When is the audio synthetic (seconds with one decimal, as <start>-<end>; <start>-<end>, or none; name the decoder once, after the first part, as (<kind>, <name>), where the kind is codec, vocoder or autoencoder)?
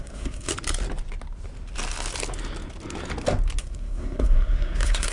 0.0-0.5 (codec, SNAC); 3.6-5.1